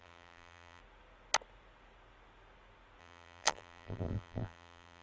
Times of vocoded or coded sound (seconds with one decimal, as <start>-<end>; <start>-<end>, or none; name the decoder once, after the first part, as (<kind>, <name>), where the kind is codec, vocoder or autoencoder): 0.0-0.8 (vocoder, BigVGAN v2); 3.0-5.0